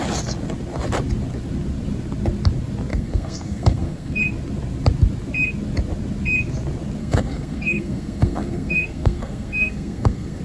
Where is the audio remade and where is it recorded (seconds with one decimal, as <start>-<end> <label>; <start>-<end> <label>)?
0.0-2.9 recorded; 2.9-4.2 remade; 4.2-7.0 recorded; 7.0-10.4 remade